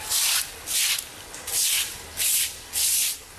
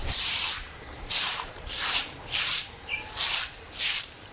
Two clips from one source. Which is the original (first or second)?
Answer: first